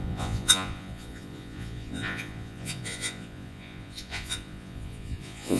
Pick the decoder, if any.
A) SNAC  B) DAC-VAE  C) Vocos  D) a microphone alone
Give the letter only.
C